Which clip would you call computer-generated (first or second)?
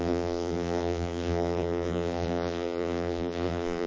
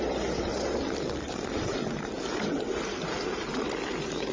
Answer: first